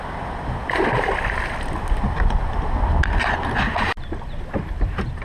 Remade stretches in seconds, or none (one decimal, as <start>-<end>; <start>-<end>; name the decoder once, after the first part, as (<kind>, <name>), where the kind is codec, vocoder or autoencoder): none